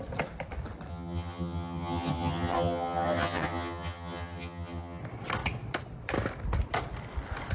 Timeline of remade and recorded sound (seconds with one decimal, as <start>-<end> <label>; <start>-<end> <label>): 0.0-0.9 recorded; 0.9-5.0 remade; 5.0-7.5 recorded